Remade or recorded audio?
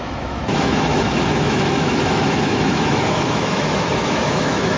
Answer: remade